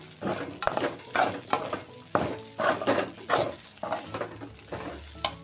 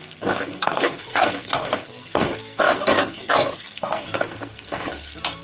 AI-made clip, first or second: second